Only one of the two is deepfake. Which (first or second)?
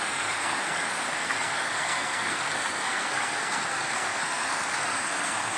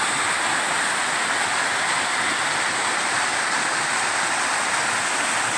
first